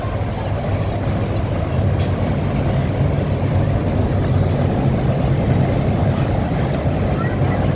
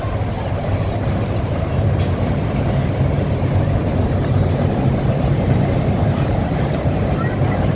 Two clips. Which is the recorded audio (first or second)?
first